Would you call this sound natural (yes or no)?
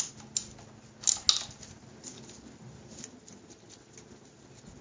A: yes